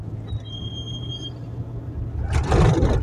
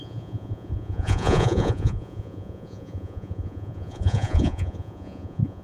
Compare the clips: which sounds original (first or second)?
first